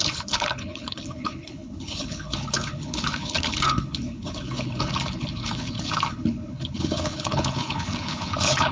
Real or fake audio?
fake